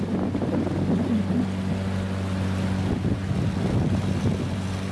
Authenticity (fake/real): real